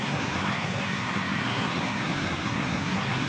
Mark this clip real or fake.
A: fake